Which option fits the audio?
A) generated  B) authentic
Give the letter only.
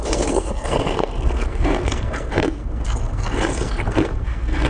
A